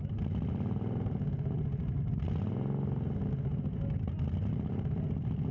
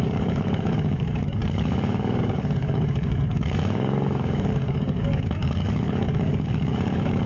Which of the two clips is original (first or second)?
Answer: first